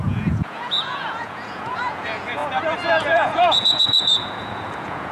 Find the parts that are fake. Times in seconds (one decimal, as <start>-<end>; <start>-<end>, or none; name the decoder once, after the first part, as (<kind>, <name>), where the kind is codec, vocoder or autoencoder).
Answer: 0.0-2.4 (vocoder, Vocos); 3.0-5.1